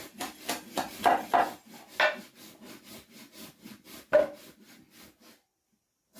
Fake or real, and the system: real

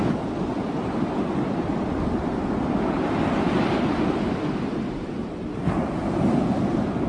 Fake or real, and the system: fake, vocoder, BigVGAN v2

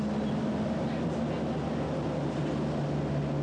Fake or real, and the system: real